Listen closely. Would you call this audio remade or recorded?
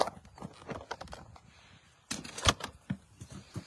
recorded